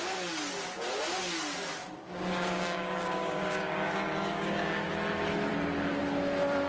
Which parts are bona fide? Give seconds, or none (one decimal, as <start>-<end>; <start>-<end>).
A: 0.0-1.8; 4.9-6.7

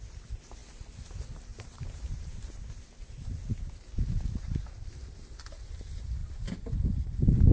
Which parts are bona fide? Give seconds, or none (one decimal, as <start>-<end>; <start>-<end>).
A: 0.0-1.5; 2.4-6.2; 6.7-7.5